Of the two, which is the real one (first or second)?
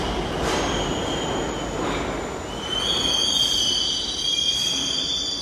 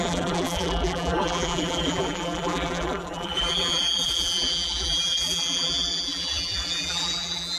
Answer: first